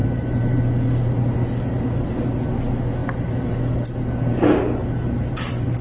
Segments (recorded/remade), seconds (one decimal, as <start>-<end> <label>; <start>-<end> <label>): 0.0-0.6 remade; 0.6-4.8 recorded; 4.8-5.8 remade